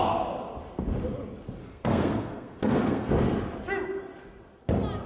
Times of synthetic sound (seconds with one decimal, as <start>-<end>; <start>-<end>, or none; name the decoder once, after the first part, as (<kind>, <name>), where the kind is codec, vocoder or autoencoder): 1.6-3.1 (codec, SNAC)